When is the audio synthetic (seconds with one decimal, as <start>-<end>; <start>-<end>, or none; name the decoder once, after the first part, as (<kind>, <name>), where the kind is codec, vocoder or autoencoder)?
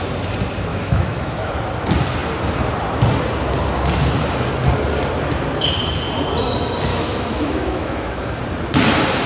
0.7-1.5 (autoencoder, DAC-VAE); 6.9-8.4